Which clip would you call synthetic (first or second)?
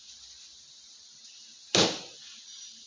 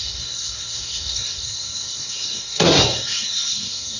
second